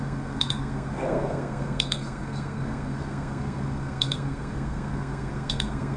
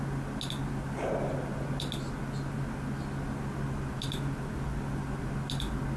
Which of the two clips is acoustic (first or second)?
second